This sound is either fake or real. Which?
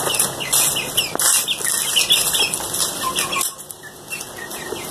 real